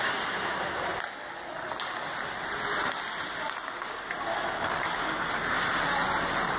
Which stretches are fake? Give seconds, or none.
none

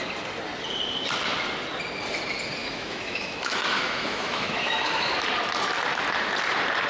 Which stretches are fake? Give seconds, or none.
2.6-5.1 (autoencoder, DAC-VAE)

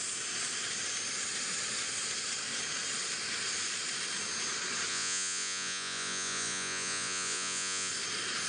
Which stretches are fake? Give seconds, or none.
4.9-7.9 (vocoder, Vocos)

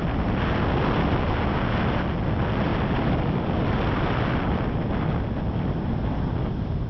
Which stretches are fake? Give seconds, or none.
none

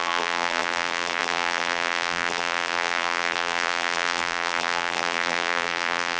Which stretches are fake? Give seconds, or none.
0.0-6.2 (vocoder, BigVGAN v2)

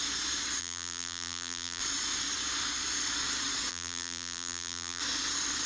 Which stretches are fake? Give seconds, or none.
0.6-1.8 (vocoder, BigVGAN v2); 3.7-5.0

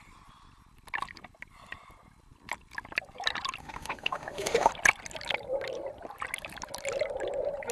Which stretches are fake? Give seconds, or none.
3.6-4.7 (autoencoder, DAC-VAE)

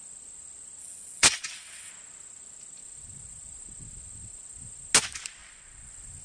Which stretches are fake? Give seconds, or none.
0.8-1.9 (vocoder, WaveNeXt)